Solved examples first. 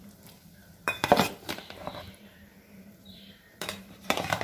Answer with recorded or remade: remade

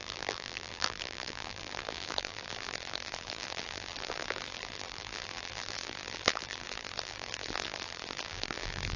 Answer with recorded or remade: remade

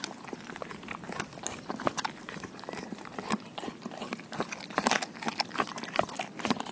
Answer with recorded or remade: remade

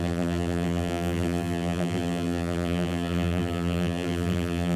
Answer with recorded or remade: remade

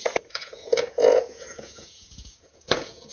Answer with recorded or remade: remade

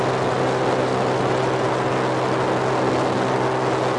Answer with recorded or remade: recorded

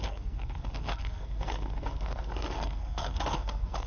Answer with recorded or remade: remade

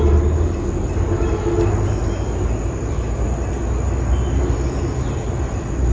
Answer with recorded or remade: recorded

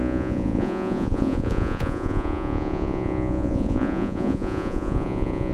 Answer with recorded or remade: remade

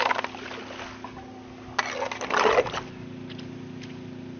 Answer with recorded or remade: recorded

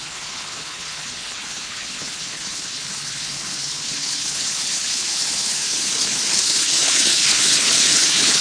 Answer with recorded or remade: remade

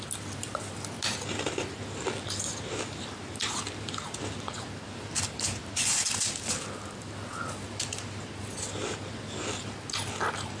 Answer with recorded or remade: recorded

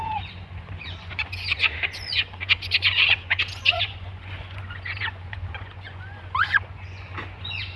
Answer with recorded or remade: remade